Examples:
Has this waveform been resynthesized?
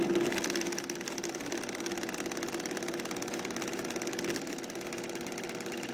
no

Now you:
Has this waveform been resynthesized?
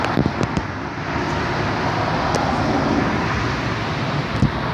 no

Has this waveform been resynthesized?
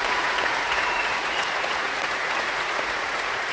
yes